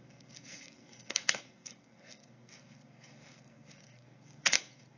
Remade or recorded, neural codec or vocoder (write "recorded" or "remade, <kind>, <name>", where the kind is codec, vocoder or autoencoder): remade, codec, SNAC